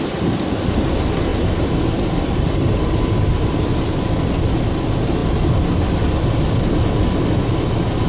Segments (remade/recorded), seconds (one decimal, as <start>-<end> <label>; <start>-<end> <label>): 0.0-1.3 recorded; 1.3-4.0 remade; 4.0-8.1 recorded